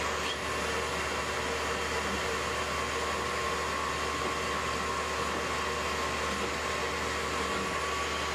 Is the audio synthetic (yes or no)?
no